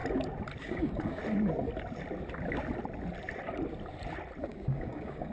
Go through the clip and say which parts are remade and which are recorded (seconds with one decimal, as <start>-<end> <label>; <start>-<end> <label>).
0.0-0.6 recorded; 0.6-1.2 remade; 1.2-4.4 recorded; 4.4-5.3 remade

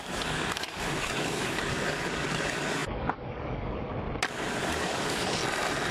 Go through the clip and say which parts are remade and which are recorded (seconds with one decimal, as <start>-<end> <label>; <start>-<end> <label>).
0.0-3.9 remade; 3.9-4.5 recorded; 4.5-5.4 remade; 5.4-5.9 recorded

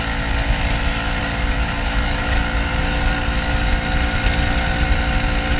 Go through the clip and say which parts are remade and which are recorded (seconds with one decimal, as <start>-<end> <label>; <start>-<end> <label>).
0.0-1.2 recorded; 1.2-3.7 remade; 3.7-5.6 recorded

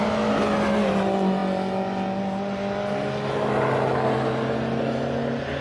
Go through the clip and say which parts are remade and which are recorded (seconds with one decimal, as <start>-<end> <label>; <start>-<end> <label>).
0.0-5.6 recorded

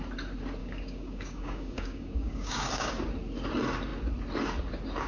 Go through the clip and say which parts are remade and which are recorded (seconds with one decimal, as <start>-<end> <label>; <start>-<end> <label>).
0.0-0.6 recorded; 0.6-2.9 remade; 2.9-5.1 recorded

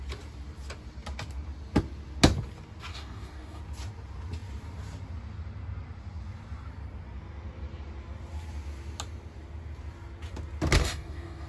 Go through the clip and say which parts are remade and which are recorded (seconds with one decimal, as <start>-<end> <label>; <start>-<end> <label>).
0.0-2.9 recorded; 2.9-3.6 remade; 3.6-10.8 recorded; 10.8-11.5 remade

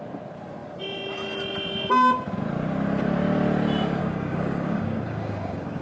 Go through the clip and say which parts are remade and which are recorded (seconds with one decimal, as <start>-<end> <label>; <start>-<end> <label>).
0.0-4.0 recorded; 4.0-5.8 remade